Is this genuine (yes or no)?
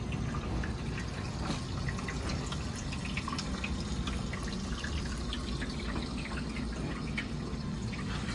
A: yes